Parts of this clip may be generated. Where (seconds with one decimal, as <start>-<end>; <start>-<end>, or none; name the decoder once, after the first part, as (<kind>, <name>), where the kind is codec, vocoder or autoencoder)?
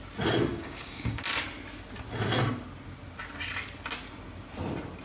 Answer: 0.5-1.2 (codec, DAC)